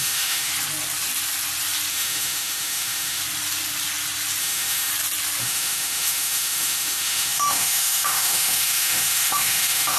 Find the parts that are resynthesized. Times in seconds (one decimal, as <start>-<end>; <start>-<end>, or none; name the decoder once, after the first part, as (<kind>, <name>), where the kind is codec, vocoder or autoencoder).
0.0-0.5 (autoencoder, DAC-VAE); 1.9-3.2; 4.4-4.9; 5.4-10.0